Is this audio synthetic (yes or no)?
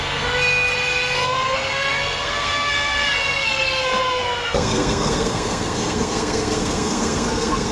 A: yes